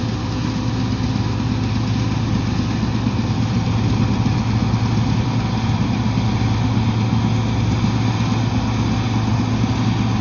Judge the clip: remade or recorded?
recorded